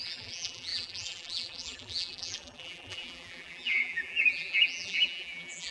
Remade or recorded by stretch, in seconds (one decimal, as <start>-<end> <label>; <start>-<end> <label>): 0.0-5.7 remade